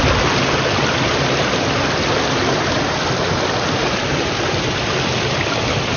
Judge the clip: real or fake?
real